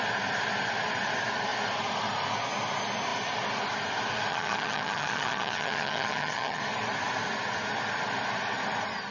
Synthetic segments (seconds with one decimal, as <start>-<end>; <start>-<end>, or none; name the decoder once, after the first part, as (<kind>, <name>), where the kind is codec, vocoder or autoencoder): 4.3-6.6 (vocoder, HiFi-GAN)